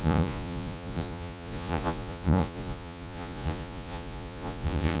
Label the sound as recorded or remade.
remade